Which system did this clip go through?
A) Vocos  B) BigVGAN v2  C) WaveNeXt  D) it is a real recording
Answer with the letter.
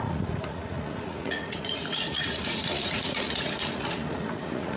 A